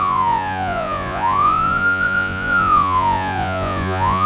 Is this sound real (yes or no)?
no